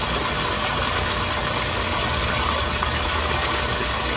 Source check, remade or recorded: recorded